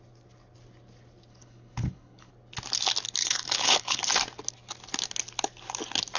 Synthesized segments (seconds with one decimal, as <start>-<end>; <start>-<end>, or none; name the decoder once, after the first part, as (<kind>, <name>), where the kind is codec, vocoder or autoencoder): 1.3-2.3 (codec, HILCodec); 3.2-4.0